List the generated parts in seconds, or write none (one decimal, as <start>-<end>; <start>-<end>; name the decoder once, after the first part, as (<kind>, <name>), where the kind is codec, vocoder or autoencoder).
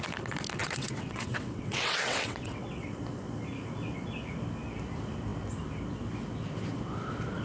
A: 0.6-2.8 (vocoder, WaveNeXt)